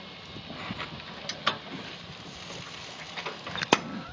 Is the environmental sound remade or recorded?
recorded